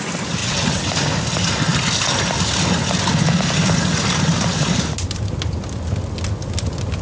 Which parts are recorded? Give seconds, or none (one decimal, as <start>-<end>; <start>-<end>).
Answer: 0.0-0.4; 0.9-7.0

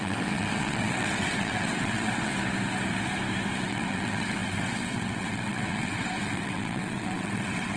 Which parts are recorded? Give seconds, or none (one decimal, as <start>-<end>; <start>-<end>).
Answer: 2.3-3.6

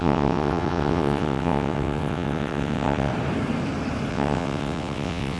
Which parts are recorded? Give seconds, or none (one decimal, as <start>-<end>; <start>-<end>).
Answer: 3.1-4.1